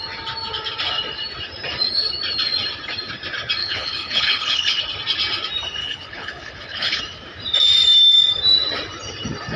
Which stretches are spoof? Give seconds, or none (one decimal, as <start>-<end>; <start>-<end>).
3.6-4.8; 5.8-7.0